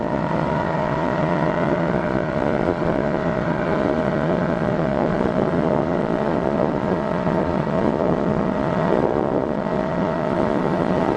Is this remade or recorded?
remade